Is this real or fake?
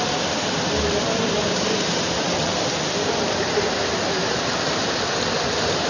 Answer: real